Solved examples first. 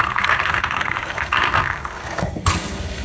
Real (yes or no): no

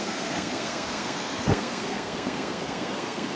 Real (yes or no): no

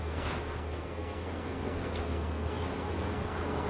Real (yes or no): no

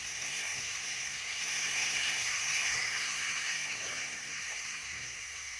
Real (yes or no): no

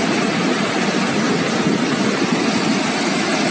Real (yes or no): yes